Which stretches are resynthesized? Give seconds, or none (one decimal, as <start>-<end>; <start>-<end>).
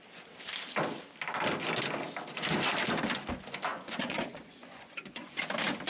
3.7-5.4